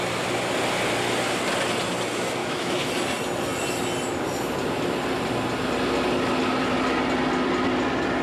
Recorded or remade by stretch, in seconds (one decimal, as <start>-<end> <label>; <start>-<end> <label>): 0.0-2.4 recorded; 2.4-2.9 remade; 2.9-8.2 recorded